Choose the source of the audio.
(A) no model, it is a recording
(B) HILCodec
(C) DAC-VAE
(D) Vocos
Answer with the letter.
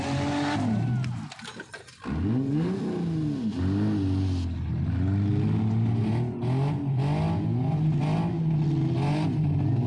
A